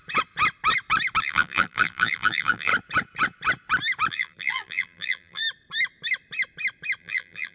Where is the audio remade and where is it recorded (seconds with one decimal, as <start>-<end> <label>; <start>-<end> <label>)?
0.0-1.2 recorded; 1.2-2.7 remade; 2.7-4.1 recorded; 4.1-5.4 remade; 5.4-7.0 recorded; 7.0-7.5 remade